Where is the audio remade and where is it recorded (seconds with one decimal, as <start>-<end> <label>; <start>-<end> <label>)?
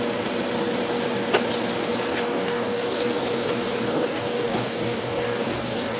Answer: 0.0-2.1 recorded; 2.1-6.0 remade